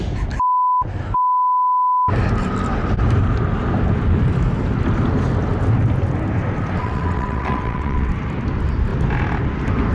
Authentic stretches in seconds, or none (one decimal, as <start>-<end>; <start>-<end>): 0.0-6.8; 8.1-9.9